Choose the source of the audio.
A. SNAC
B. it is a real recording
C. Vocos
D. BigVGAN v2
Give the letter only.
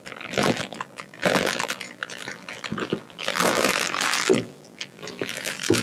D